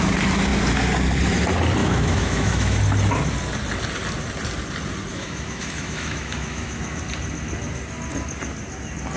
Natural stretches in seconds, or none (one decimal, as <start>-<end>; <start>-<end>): 0.0-1.8; 2.8-5.1; 7.0-9.2